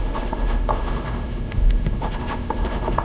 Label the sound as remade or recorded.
remade